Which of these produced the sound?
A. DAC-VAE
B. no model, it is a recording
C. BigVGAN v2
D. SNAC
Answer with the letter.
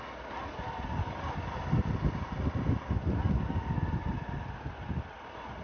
B